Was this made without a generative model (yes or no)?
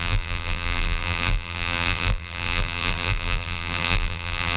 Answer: no